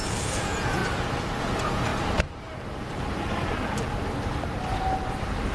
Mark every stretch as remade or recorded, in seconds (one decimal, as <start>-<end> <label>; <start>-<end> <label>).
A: 0.0-0.8 remade; 0.8-1.4 recorded; 1.4-1.9 remade; 1.9-5.5 recorded